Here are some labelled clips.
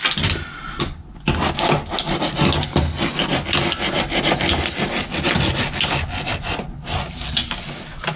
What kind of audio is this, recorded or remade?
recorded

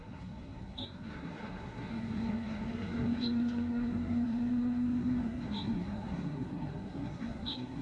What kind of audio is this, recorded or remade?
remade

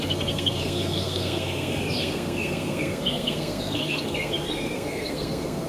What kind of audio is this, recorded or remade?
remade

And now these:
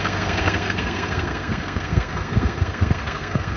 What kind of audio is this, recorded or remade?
remade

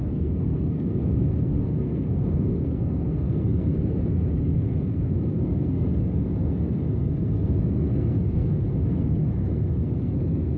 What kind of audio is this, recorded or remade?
remade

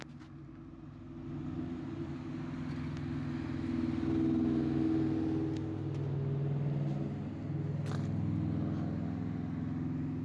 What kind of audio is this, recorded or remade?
recorded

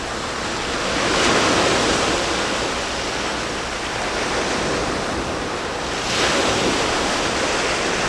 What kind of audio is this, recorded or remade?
recorded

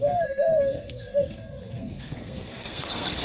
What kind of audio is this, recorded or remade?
remade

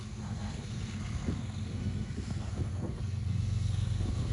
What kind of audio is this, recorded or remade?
remade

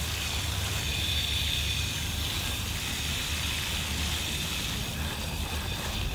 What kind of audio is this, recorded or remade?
recorded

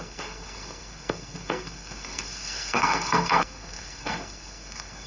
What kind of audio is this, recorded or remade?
remade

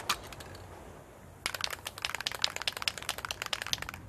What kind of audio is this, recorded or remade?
recorded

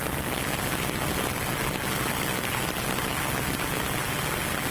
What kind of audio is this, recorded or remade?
recorded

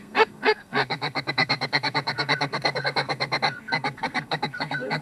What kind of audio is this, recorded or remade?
remade